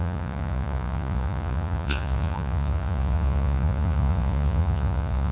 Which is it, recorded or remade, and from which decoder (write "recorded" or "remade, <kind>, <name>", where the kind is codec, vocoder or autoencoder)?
remade, vocoder, Vocos